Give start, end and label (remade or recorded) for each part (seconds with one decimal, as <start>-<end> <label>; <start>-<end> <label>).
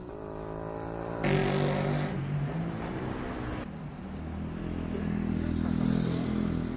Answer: 0.0-6.8 recorded